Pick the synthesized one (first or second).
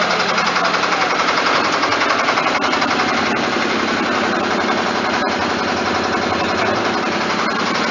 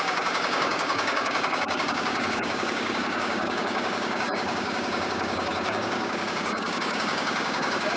second